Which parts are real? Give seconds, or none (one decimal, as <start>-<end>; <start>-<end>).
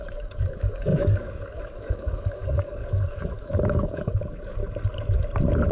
4.6-5.7